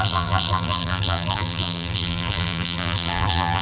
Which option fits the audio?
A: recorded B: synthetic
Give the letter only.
B